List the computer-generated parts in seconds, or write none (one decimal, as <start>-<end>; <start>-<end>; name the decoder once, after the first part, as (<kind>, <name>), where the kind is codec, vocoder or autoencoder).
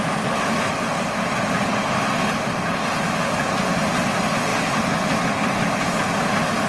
none